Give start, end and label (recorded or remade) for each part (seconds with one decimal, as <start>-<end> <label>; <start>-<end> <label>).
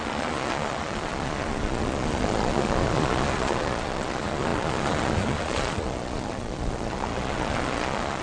0.0-8.2 remade